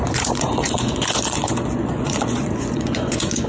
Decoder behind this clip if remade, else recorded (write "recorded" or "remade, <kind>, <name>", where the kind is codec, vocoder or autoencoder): remade, vocoder, Vocos